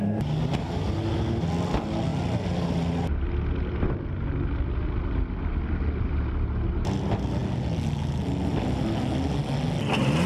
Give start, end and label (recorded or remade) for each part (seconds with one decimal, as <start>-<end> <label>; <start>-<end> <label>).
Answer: 0.0-10.3 recorded